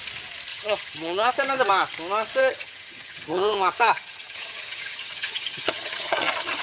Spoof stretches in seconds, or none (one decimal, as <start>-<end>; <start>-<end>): 0.5-1.3; 2.4-6.6